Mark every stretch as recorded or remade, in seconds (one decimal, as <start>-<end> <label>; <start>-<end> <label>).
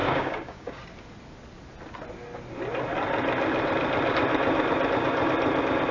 0.0-0.8 remade; 0.8-5.9 recorded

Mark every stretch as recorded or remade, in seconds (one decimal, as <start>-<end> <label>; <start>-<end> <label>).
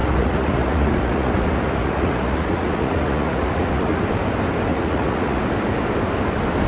0.0-4.0 remade; 4.0-4.7 recorded; 4.7-5.4 remade; 5.4-6.7 recorded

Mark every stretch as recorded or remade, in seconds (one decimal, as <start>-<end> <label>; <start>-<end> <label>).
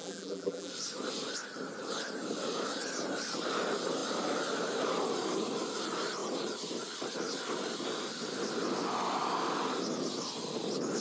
0.0-0.7 remade; 0.7-11.0 recorded